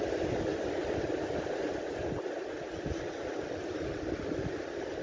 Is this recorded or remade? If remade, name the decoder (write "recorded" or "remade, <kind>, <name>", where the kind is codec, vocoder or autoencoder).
recorded